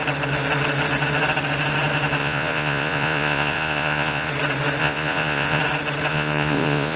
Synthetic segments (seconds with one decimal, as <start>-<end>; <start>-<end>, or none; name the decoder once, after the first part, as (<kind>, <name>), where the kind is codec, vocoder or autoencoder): 2.2-4.3 (vocoder, Vocos); 4.8-5.6; 6.1-7.0